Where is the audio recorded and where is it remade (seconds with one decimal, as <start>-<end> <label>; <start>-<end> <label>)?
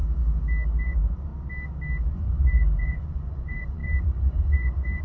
0.0-0.8 recorded; 0.8-1.3 remade; 1.3-2.1 recorded; 2.1-5.0 remade